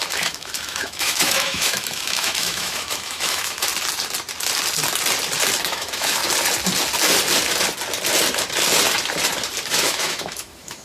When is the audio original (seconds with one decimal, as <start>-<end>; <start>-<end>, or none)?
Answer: 3.7-5.7; 6.2-9.7